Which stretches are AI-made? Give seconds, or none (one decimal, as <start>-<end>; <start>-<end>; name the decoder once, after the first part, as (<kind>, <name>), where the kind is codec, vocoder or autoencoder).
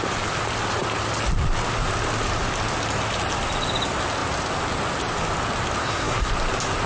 5.8-6.3 (codec, SNAC)